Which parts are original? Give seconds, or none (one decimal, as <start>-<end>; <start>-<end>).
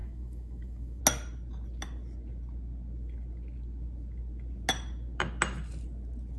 1.0-6.4